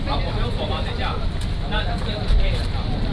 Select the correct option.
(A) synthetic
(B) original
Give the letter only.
B